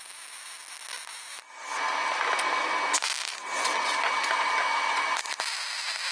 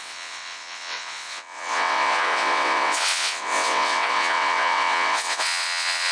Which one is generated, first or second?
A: second